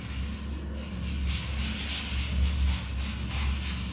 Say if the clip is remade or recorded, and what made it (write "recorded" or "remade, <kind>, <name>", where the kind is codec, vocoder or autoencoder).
recorded